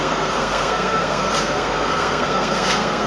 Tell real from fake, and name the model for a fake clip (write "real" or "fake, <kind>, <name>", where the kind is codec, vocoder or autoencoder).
fake, codec, SNAC